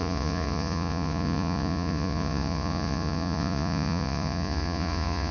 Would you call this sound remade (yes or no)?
yes